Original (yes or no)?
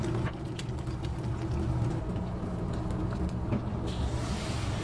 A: yes